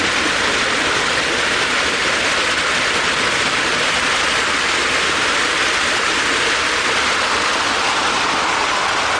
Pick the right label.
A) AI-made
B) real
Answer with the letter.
B